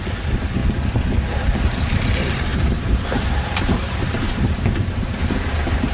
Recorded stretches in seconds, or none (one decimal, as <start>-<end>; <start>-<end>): 0.6-1.6